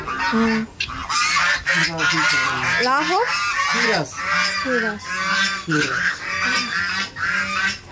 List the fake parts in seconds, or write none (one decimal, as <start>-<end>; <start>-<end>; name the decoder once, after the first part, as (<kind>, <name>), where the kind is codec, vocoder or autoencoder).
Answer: 5.7-6.2 (codec, HILCodec)